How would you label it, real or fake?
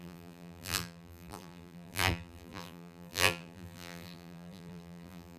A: fake